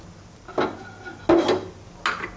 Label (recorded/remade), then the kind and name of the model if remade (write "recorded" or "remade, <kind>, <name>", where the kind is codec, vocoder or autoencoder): recorded